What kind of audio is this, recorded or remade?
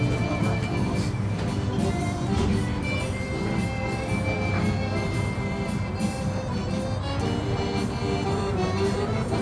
recorded